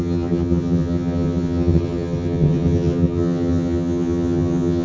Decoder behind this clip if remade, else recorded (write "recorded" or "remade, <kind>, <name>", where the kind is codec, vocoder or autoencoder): remade, vocoder, HiFi-GAN